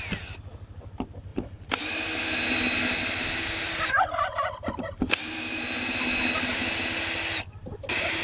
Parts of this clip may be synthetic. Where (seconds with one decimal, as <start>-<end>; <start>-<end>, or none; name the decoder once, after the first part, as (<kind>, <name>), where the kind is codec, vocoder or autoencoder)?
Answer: none